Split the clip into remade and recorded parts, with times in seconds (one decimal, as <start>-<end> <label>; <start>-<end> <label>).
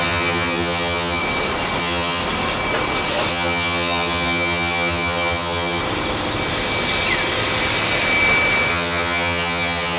0.0-1.2 remade; 1.2-1.8 recorded; 1.8-2.2 remade; 2.2-3.3 recorded; 3.3-5.8 remade; 5.8-8.7 recorded; 8.7-10.0 remade